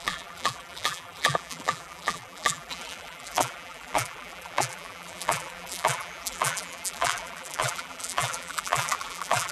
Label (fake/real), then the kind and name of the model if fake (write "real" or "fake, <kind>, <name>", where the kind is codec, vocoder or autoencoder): fake, vocoder, BigVGAN v2